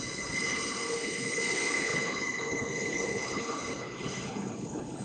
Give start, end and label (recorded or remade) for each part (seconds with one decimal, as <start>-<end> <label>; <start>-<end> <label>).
0.0-5.0 remade